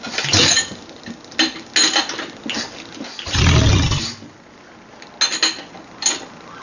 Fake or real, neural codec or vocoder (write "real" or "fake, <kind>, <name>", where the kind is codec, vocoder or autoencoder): real